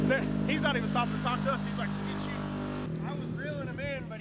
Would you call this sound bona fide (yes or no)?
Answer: yes